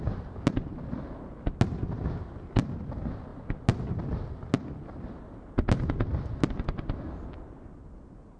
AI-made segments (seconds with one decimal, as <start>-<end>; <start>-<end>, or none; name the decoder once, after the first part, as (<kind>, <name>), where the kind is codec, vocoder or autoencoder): none